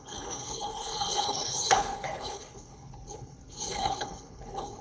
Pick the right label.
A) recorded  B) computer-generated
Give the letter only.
B